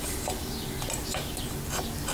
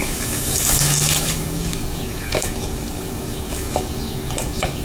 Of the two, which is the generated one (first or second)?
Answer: second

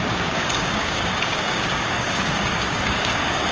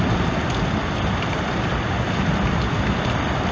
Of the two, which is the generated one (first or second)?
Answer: first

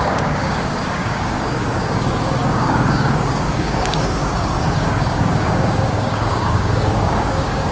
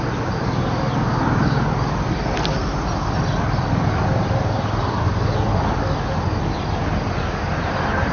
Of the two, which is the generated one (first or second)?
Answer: first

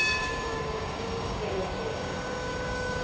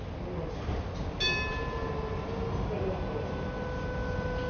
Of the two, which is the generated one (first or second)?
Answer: first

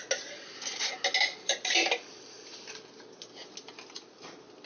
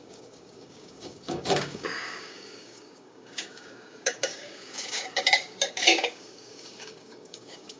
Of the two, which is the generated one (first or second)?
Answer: second